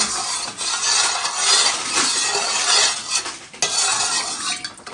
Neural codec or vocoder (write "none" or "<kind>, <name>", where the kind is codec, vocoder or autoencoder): none